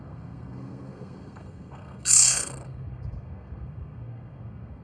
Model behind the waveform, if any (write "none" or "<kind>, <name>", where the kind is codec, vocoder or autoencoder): codec, SNAC